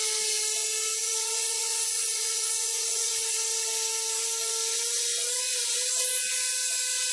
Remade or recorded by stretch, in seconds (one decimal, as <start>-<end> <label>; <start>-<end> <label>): 0.0-1.0 recorded; 1.0-3.1 remade; 3.1-7.1 recorded